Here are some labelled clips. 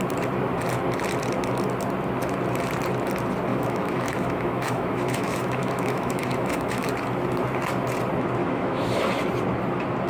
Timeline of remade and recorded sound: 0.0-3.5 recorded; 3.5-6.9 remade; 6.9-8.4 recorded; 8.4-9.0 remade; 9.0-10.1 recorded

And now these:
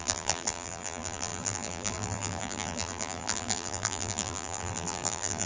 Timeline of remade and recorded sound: 0.0-5.5 remade

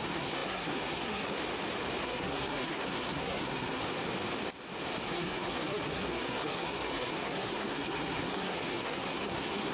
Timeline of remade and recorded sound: 0.0-1.4 remade; 1.4-2.0 recorded; 2.0-3.8 remade; 3.8-5.1 recorded; 5.1-9.7 remade